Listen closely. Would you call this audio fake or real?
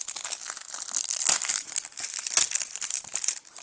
real